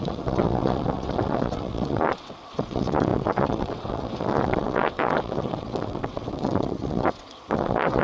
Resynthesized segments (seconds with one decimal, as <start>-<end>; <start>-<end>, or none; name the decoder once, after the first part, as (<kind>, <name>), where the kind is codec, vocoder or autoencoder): 0.0-8.0 (vocoder, WaveNeXt)